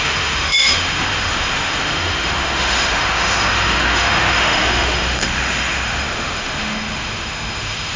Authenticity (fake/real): fake